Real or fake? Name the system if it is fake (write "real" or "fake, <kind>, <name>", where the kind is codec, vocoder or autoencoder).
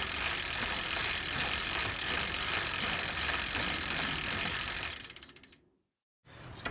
real